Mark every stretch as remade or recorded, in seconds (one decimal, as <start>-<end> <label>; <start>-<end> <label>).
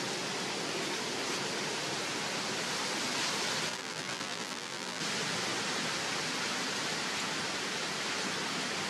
0.0-3.7 recorded; 3.7-5.0 remade; 5.0-8.9 recorded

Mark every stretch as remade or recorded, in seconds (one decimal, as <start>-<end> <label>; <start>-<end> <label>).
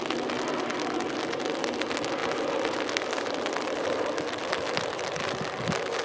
0.0-2.2 recorded; 2.2-4.8 remade; 4.8-6.0 recorded